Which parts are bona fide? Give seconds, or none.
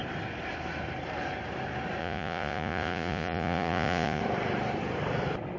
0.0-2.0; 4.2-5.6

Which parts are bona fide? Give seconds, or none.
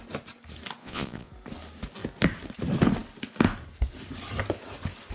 0.0-0.8; 1.3-5.1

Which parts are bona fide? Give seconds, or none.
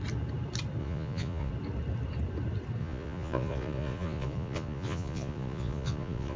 0.0-0.8; 1.5-2.8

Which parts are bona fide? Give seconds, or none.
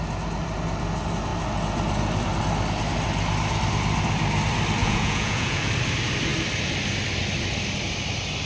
0.0-4.8; 5.7-8.5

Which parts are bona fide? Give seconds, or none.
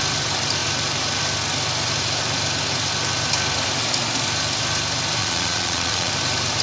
0.0-5.2; 6.1-6.6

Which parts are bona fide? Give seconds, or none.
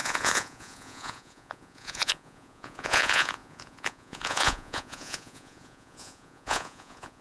none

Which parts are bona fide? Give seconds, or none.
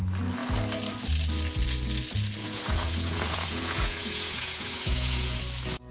0.0-2.4; 5.4-5.9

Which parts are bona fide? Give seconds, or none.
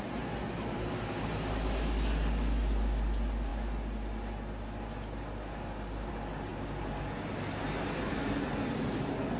0.0-9.4